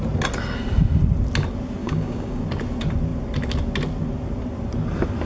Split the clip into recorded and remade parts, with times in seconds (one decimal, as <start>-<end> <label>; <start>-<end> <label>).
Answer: 0.0-1.8 recorded; 1.8-2.4 remade; 2.4-5.3 recorded